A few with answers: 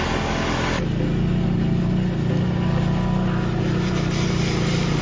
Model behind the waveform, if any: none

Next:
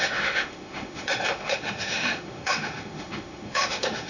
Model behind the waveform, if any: autoencoder, DAC-VAE